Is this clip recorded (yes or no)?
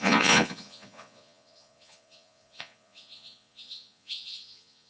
no